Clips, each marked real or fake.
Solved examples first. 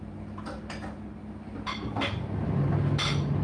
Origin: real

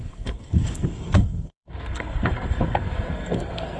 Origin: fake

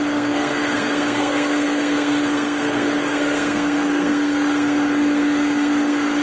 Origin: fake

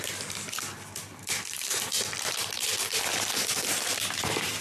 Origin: real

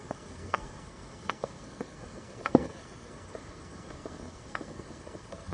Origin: fake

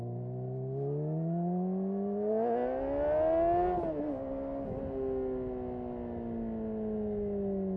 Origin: real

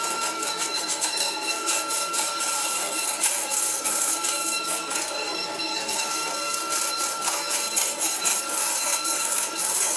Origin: fake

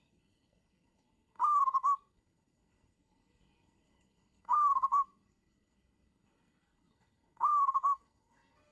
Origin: fake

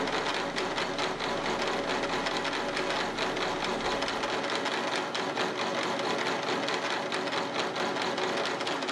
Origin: real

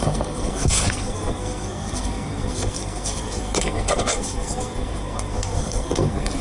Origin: fake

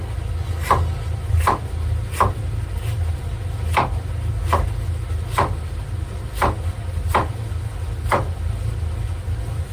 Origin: real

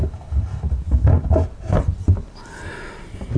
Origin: real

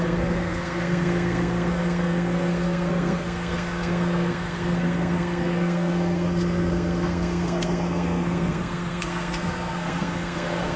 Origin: fake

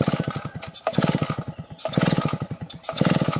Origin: real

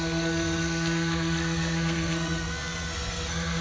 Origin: fake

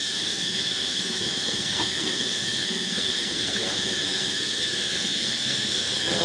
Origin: fake